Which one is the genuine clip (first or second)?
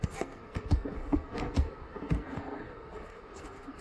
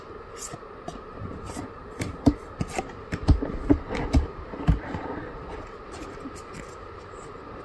second